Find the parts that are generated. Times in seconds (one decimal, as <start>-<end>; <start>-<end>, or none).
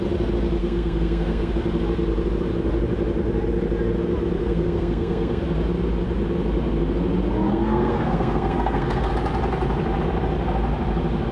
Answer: 0.6-1.5; 4.4-5.4; 7.5-9.1